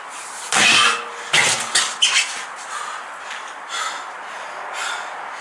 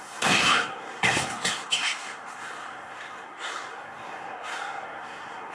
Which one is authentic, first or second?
first